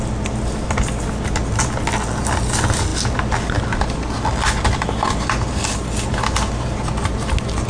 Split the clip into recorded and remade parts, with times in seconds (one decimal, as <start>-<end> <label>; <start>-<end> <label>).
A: 0.0-7.7 recorded